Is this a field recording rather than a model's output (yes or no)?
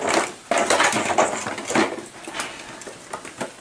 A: yes